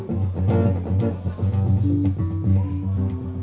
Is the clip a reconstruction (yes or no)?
no